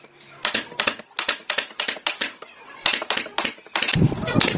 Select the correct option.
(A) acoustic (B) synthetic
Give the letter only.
A